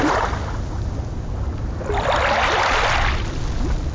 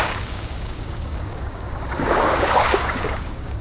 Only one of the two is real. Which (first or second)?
first